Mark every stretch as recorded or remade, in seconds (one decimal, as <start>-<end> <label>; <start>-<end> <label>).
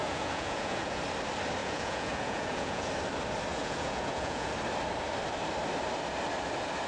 0.0-1.0 remade; 1.0-1.6 recorded; 1.6-2.9 remade; 2.9-3.5 recorded; 3.5-4.5 remade; 4.5-6.9 recorded